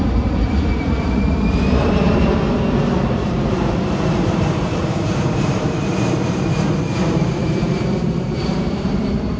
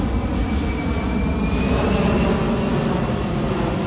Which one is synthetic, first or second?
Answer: first